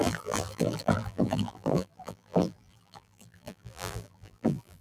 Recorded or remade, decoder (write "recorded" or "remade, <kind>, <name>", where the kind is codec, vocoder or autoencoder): remade, vocoder, BigVGAN v2